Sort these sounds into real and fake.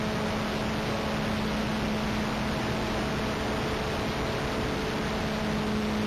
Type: real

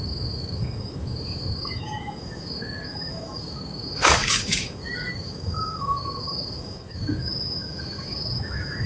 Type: fake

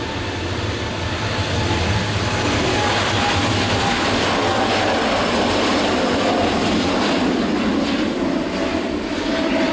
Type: real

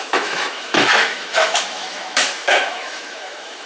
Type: fake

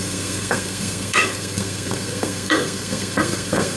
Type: fake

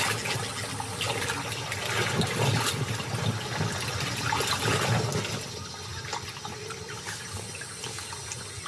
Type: real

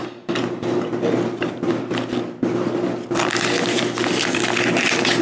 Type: real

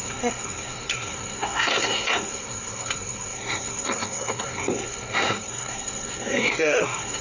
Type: fake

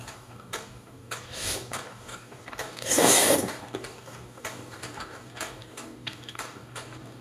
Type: fake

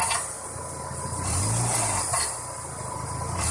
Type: real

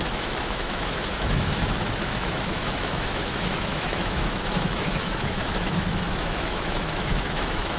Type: fake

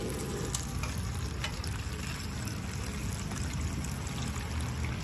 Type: real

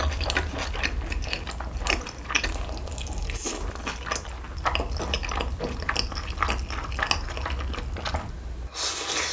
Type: real